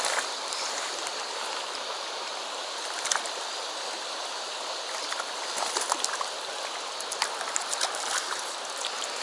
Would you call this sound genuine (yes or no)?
yes